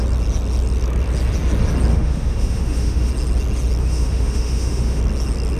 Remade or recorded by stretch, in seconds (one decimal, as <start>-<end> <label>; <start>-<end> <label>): 0.0-1.9 recorded; 1.9-3.1 remade; 3.1-3.8 recorded; 3.8-5.0 remade; 5.0-5.6 recorded